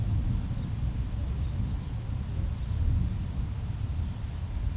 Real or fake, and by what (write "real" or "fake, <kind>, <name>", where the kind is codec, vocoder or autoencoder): real